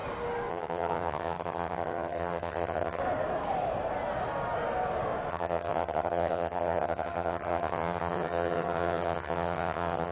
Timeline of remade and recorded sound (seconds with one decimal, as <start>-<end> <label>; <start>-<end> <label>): 0.0-0.5 recorded; 0.5-3.0 remade; 3.0-5.3 recorded; 5.3-10.1 remade